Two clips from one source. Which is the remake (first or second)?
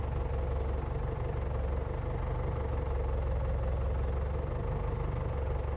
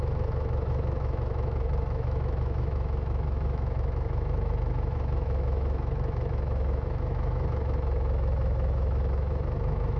second